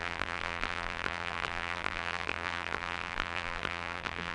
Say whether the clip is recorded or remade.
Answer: remade